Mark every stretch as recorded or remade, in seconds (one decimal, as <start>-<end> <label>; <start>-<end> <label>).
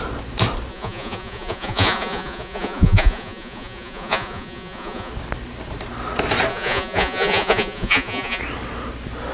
0.0-0.7 recorded; 0.7-5.1 remade; 5.1-6.5 recorded; 6.5-8.4 remade; 8.4-9.3 recorded